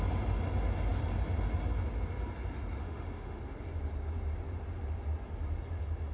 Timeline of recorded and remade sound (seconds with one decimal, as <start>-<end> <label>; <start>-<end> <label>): 0.0-2.8 recorded; 2.8-3.4 remade; 3.4-6.1 recorded